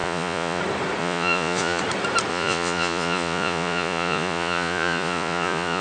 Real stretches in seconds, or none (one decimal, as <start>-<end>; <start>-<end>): 0.6-1.0; 1.8-2.3